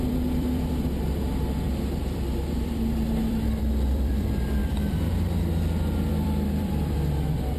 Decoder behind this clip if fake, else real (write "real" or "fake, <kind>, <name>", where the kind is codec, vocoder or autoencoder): fake, vocoder, BigVGAN v2